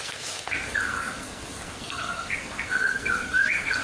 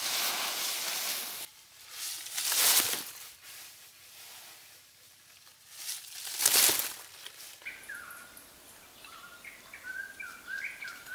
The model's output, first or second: first